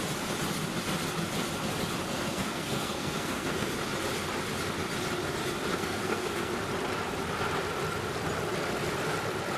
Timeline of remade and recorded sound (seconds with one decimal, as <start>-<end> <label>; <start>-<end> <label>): 0.0-2.1 recorded; 2.1-3.7 remade; 3.7-5.7 recorded; 5.7-6.5 remade; 6.5-9.6 recorded